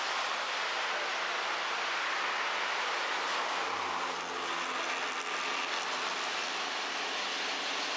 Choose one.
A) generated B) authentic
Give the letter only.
B